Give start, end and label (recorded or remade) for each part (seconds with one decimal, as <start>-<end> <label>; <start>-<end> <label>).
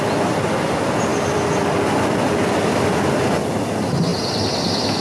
0.0-5.0 recorded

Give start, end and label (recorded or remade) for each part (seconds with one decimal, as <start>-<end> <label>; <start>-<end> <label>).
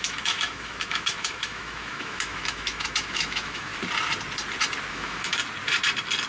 0.0-3.7 remade; 3.7-4.9 recorded; 4.9-5.4 remade; 5.4-6.3 recorded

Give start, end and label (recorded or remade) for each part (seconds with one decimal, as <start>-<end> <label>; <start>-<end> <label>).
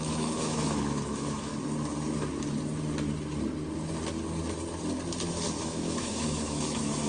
0.0-1.5 remade; 1.5-5.6 recorded; 5.6-7.1 remade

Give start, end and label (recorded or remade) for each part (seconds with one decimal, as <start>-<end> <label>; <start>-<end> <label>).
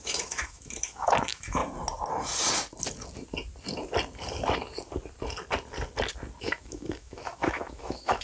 0.0-1.6 remade; 1.6-6.4 recorded; 6.4-8.2 remade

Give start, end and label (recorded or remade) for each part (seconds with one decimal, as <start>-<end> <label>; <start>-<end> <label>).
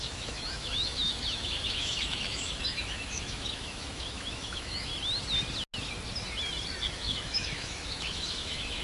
0.0-4.9 remade; 4.9-6.9 recorded; 6.9-8.8 remade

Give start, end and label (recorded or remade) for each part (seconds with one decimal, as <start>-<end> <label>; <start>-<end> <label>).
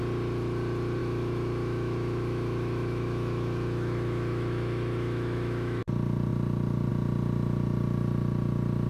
0.0-1.0 recorded; 1.0-5.8 remade; 5.8-8.9 recorded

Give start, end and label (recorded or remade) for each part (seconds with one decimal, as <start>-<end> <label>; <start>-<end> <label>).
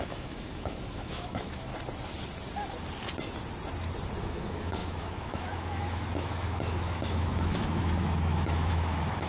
0.0-1.7 remade; 1.7-4.2 recorded; 4.2-9.3 remade